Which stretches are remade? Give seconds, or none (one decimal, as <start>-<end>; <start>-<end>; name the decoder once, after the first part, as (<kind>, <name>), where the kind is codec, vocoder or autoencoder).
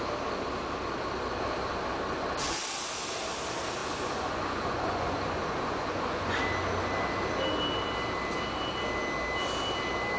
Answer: 3.8-6.4 (vocoder, Vocos)